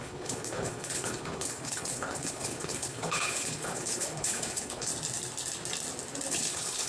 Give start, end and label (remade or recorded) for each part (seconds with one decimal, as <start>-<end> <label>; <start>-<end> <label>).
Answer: 0.0-4.9 remade; 4.9-6.3 recorded; 6.3-6.9 remade